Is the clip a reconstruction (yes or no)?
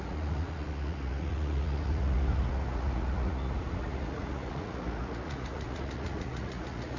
yes